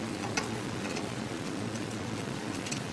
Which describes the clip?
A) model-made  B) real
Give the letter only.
A